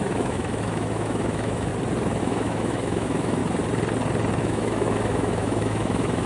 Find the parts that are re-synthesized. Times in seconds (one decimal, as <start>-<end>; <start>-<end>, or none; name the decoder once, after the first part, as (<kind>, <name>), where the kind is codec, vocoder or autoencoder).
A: 0.0-1.7 (autoencoder, DAC-VAE); 2.2-3.4; 4.4-6.3